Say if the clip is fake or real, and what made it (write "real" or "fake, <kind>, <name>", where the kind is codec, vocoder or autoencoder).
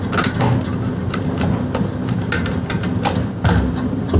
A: real